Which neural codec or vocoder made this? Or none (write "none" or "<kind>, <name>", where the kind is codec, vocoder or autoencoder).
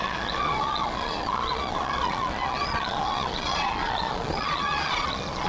vocoder, Vocos